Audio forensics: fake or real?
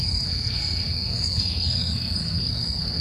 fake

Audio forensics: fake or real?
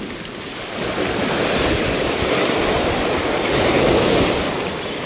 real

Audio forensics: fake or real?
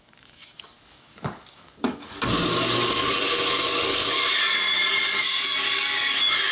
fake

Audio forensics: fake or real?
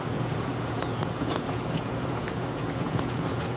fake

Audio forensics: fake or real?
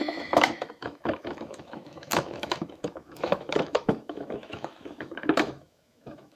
fake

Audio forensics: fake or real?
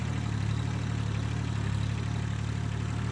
real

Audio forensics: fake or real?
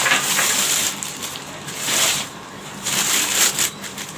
fake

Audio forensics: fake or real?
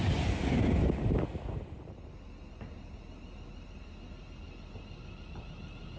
real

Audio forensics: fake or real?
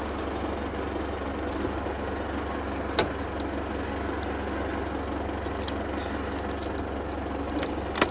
real